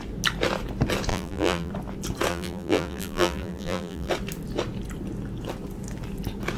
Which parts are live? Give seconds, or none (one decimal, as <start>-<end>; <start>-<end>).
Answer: 0.0-1.1; 1.7-2.3; 4.1-6.6